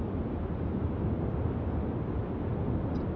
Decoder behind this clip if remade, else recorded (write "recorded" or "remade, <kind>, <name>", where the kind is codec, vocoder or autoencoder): recorded